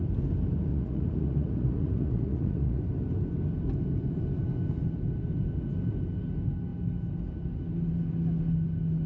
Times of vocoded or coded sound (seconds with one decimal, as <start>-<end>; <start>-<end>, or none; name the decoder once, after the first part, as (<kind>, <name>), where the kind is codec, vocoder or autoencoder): 0.7-2.8 (vocoder, Vocos)